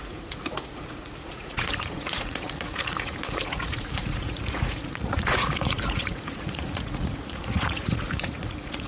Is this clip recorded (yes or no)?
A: no